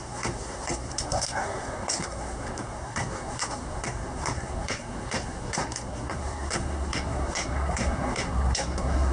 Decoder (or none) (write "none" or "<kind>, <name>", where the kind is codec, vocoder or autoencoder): codec, SNAC